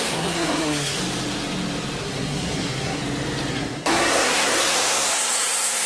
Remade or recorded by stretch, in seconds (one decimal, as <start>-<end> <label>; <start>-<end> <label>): 0.0-1.0 remade; 1.0-2.0 recorded; 2.0-3.0 remade; 3.0-3.5 recorded; 3.5-5.9 remade